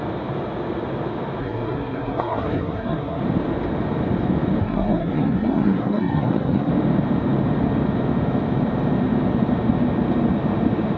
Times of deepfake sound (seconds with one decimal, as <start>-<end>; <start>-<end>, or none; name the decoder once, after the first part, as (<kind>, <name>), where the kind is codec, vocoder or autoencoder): 1.4-3.2 (codec, SNAC); 4.6-6.7